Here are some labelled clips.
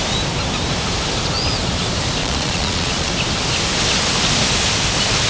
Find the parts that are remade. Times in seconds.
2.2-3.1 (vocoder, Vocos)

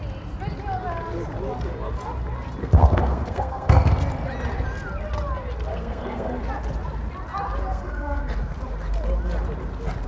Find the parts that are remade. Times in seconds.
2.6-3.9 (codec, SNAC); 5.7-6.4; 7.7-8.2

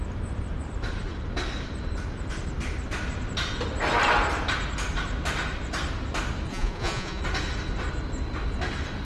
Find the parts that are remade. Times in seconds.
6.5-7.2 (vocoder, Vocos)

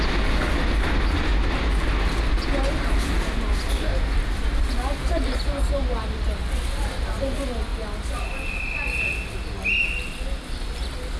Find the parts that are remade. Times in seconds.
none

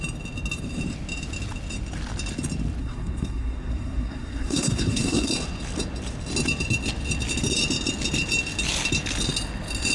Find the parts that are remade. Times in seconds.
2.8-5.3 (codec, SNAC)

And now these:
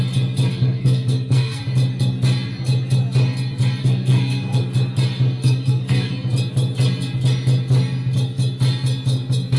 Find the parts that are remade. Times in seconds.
0.5-1.6 (codec, SNAC); 3.8-4.6; 5.4-6.1

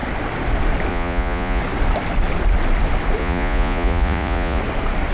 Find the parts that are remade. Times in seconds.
0.9-1.6 (vocoder, Vocos); 3.2-4.6